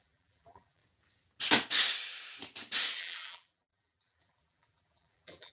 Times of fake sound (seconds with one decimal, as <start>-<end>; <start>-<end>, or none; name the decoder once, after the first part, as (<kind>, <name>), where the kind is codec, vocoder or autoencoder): 0.0-0.8 (vocoder, BigVGAN v2); 3.0-5.5